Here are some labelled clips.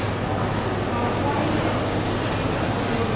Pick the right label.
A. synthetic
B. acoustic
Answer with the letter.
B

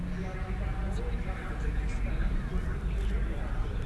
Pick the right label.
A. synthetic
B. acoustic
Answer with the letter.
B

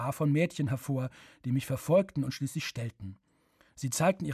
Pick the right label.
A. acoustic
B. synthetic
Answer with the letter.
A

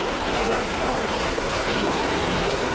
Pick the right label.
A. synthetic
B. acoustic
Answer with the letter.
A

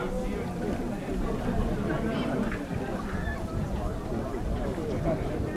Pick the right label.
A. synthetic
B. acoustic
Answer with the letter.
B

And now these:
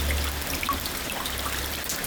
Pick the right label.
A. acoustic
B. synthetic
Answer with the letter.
A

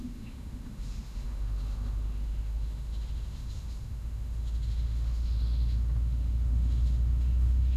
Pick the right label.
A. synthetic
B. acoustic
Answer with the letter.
A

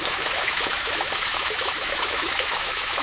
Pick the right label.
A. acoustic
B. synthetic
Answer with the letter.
B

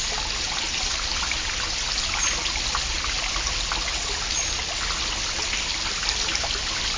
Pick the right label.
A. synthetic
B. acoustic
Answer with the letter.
B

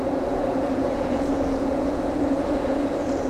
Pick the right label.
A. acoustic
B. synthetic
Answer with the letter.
B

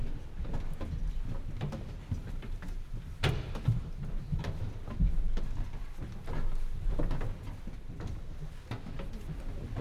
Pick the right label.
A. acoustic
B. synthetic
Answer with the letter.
A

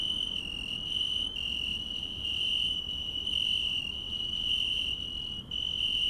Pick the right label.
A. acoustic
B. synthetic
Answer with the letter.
B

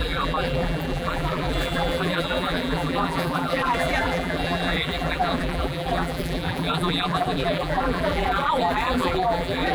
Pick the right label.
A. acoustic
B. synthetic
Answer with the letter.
B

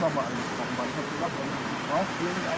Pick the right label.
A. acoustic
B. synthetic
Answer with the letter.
A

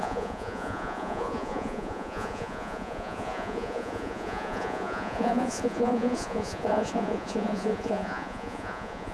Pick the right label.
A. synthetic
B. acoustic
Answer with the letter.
A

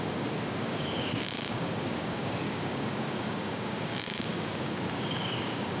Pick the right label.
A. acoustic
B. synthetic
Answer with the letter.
B